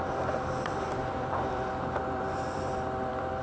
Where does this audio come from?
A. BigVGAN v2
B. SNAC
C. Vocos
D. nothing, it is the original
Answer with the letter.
A